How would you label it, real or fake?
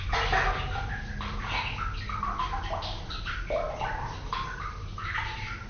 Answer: real